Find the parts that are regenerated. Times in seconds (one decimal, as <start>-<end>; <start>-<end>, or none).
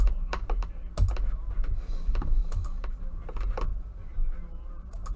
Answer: 0.0-0.8; 1.9-3.7; 4.7-5.2